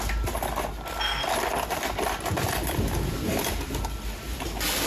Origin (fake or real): real